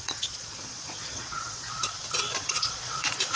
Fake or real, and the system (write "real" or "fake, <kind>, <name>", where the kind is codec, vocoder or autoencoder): fake, vocoder, Vocos